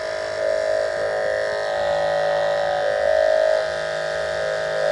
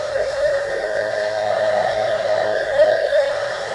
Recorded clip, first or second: first